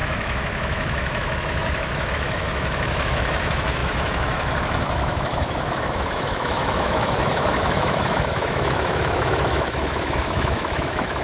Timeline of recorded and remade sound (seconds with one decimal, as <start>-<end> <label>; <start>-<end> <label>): 0.0-11.2 remade